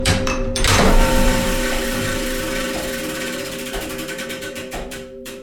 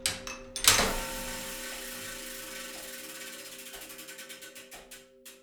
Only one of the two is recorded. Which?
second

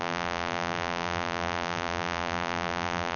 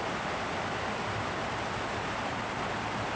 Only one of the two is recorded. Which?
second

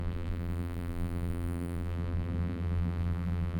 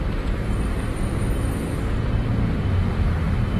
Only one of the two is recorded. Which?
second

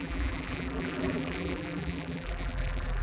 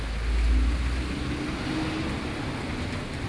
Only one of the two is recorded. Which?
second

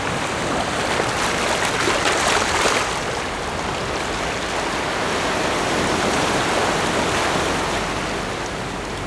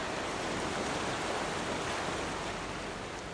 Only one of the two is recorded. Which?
first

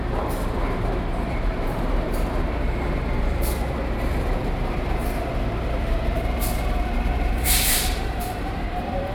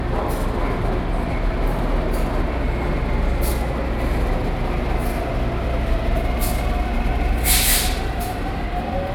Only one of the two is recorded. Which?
second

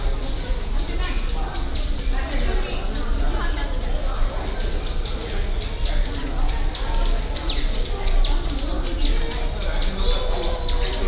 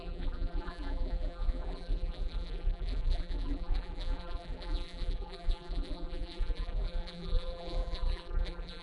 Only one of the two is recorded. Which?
first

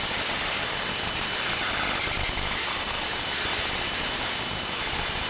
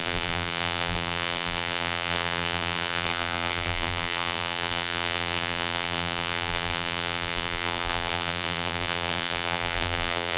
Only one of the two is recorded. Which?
first